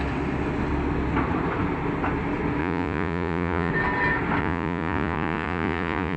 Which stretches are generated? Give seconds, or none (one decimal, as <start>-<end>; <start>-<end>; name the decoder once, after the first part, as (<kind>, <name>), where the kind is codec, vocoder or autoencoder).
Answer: 2.6-3.7 (vocoder, Vocos); 4.4-6.2